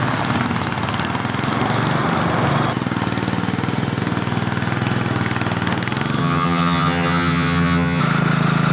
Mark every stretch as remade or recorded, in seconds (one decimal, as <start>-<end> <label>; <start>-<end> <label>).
0.0-6.2 recorded; 6.2-8.0 remade; 8.0-8.7 recorded